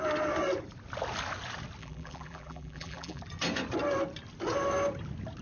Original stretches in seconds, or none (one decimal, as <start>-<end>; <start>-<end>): 0.0-1.8; 3.2-5.4